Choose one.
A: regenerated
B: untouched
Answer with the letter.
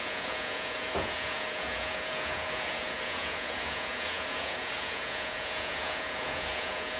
A